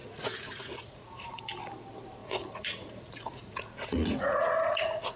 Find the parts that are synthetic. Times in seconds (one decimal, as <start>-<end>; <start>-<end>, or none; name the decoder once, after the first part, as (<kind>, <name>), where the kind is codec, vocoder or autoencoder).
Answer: 0.0-1.4 (vocoder, Vocos); 2.2-5.2